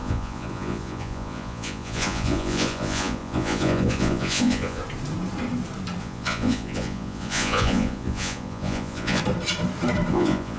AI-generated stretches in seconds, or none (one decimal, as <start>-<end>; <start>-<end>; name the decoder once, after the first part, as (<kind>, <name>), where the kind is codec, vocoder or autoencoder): 0.0-4.8 (vocoder, Vocos); 6.0-9.2; 10.1-10.6